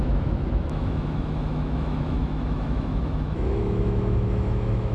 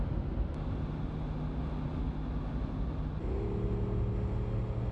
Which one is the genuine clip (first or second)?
second